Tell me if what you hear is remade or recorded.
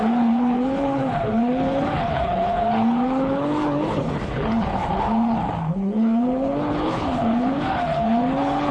remade